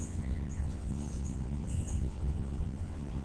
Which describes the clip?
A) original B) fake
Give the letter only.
B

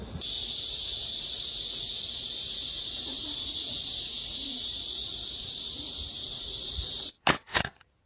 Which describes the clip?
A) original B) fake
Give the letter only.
B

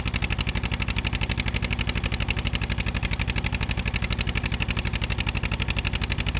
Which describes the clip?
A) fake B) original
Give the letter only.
B